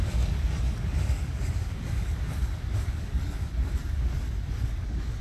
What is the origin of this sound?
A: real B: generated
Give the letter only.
B